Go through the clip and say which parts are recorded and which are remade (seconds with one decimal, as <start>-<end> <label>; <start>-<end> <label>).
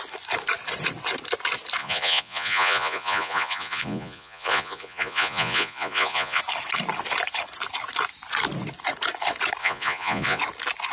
0.0-1.8 recorded; 1.8-6.4 remade; 6.4-9.6 recorded; 9.6-10.4 remade; 10.4-10.9 recorded